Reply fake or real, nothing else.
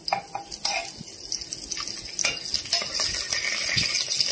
real